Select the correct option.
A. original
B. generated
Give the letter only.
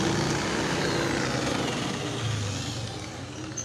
A